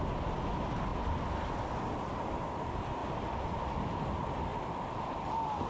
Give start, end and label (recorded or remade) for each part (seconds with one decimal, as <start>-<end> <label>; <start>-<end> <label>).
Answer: 0.0-5.7 recorded